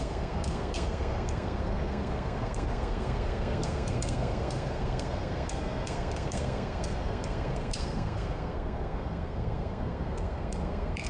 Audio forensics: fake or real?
fake